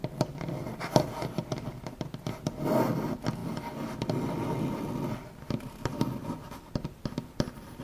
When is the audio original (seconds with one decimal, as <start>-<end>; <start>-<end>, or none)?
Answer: 0.0-7.8